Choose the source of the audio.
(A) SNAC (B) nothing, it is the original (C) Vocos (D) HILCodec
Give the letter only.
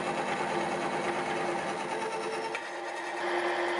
B